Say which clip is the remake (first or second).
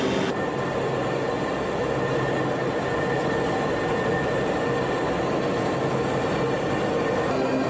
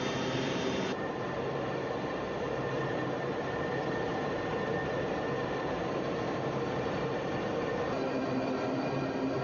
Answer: second